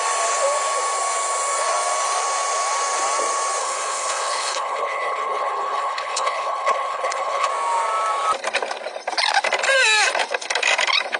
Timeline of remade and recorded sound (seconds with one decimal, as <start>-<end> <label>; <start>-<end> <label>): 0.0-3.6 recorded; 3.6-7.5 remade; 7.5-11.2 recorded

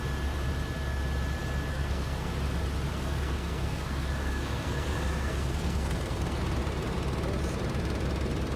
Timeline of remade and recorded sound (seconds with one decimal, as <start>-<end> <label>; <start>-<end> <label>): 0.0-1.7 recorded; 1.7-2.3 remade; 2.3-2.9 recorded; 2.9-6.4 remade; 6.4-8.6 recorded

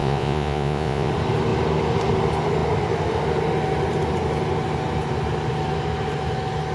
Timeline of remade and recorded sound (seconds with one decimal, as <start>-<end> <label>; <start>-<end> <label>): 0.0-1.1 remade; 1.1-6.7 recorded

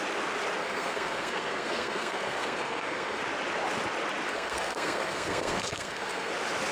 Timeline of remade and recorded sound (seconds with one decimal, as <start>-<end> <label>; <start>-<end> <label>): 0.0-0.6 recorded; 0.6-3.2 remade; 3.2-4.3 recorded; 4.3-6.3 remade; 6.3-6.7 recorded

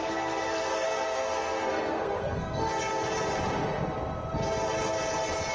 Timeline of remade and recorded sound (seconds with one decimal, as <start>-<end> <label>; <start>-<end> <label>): 0.0-2.7 remade; 2.7-5.5 recorded

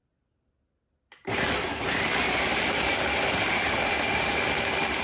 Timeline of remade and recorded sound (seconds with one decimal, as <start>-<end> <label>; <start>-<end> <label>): 0.0-5.0 recorded